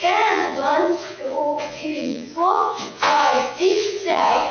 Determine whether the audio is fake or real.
fake